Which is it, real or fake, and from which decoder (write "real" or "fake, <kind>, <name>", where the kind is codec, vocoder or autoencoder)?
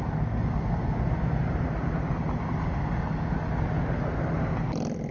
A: real